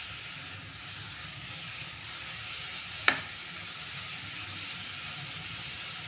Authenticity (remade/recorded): recorded